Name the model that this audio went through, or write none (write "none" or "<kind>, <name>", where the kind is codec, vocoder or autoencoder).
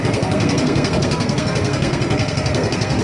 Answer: codec, SNAC